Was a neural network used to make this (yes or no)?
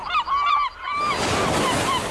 no